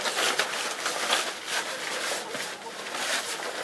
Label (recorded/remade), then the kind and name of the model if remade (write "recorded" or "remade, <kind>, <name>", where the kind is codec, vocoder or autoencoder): remade, vocoder, BigVGAN v2